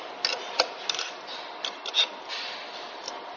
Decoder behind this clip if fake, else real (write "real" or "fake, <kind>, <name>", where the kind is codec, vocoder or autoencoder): real